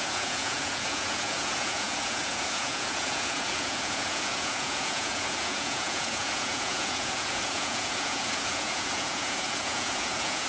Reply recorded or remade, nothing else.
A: remade